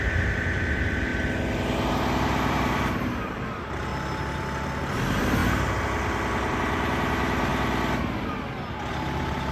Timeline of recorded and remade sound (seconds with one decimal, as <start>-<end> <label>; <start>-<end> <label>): 0.0-1.1 remade; 1.1-1.9 recorded; 1.9-3.9 remade; 3.9-5.0 recorded; 5.0-5.4 remade; 5.4-6.5 recorded; 6.5-7.5 remade; 7.5-8.9 recorded; 8.9-9.5 remade